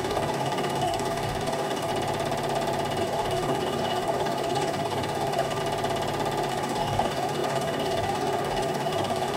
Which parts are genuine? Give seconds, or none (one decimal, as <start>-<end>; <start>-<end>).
1.9-3.0; 5.6-6.5